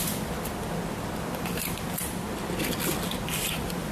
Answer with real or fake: real